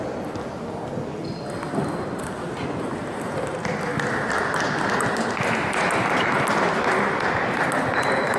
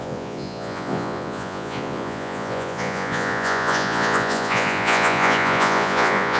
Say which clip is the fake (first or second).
second